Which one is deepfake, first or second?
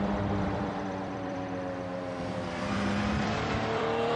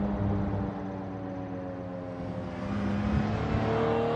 first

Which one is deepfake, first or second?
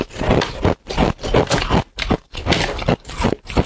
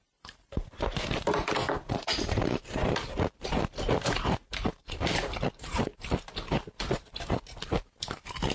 second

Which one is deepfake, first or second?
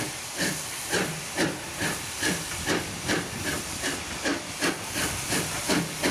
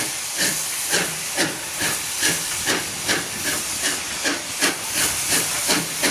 first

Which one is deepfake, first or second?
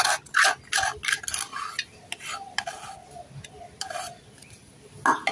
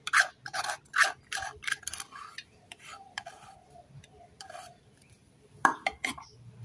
second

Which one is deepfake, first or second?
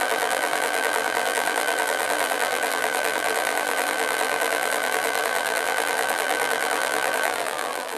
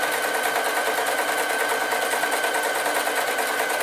first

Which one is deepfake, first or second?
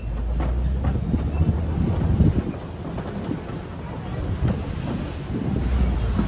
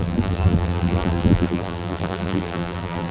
second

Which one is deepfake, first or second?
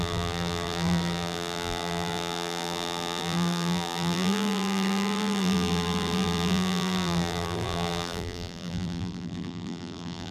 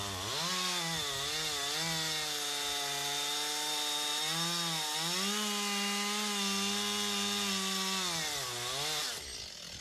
first